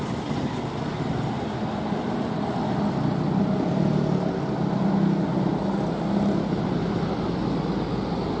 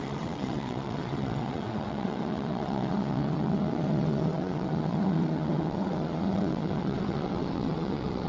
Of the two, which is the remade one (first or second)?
second